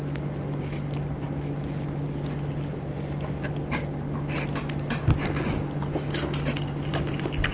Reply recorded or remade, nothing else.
recorded